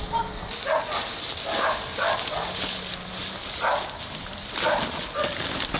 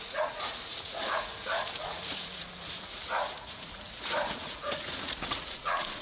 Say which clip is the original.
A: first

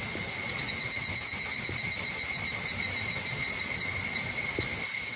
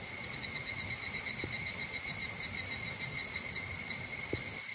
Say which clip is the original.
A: first